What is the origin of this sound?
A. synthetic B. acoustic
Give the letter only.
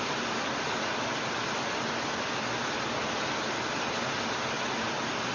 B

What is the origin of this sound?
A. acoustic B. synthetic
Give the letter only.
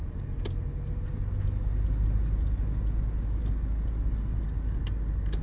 A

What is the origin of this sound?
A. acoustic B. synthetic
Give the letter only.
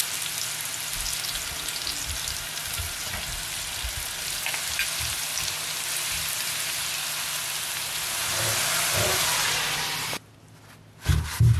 A